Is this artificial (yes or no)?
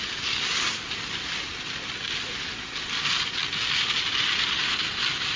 no